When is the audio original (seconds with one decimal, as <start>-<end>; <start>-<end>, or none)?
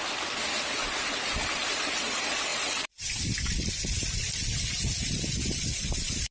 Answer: 0.0-6.3